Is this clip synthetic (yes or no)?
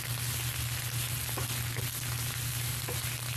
no